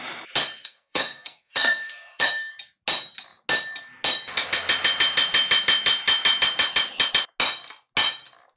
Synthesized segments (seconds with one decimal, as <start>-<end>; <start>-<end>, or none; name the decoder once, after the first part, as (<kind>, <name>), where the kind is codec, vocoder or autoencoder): 0.6-2.5 (codec, SNAC)